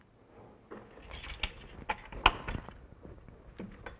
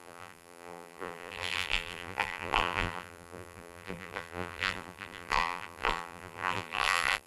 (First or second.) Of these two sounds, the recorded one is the first